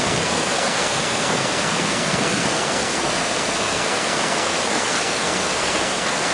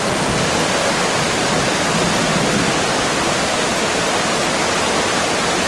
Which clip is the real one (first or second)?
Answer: second